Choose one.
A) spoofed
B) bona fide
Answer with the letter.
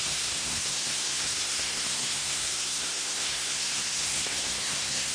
A